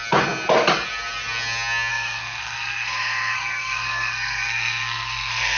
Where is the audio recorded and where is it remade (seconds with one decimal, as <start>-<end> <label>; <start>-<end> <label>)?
0.0-1.9 recorded; 1.9-5.6 remade